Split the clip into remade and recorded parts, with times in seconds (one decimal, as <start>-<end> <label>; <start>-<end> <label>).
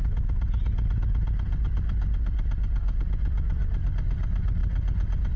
0.0-5.4 recorded